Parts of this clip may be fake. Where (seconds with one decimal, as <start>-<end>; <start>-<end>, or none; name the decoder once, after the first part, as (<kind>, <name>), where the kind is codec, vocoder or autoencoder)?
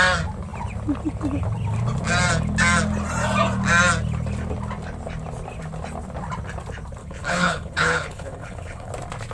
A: 7.0-8.9 (codec, HILCodec)